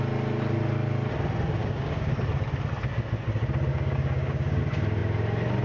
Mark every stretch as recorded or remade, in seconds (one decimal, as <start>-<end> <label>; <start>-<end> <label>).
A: 0.0-1.6 recorded; 1.6-2.1 remade; 2.1-3.7 recorded; 3.7-4.6 remade; 4.6-5.6 recorded